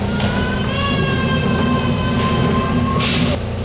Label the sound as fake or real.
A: real